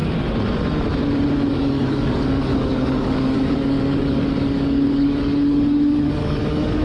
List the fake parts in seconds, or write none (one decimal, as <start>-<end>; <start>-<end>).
1.5-6.8